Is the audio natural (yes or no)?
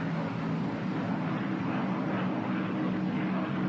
yes